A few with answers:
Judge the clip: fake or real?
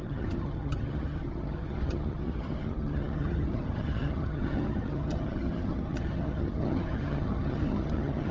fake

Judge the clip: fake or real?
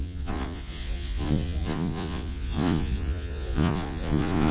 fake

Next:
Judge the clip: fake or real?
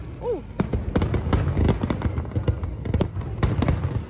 real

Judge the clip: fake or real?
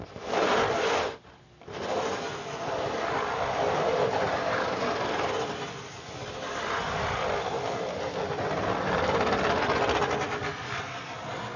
real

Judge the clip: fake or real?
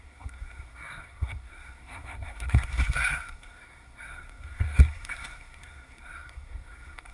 fake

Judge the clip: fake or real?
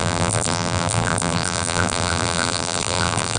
fake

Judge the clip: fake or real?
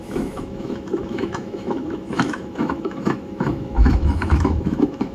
fake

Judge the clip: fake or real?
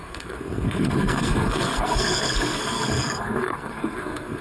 fake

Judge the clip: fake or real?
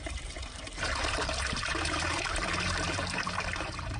fake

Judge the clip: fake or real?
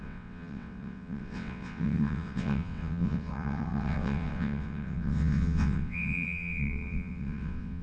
fake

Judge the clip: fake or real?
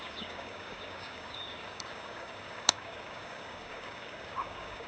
fake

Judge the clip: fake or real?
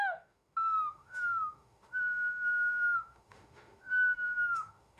fake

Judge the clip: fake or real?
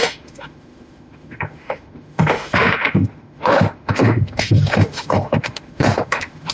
fake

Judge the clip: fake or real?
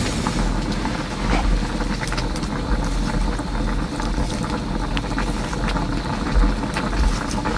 real